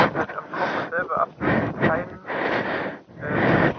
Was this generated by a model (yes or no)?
no